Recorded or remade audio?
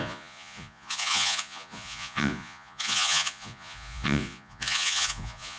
remade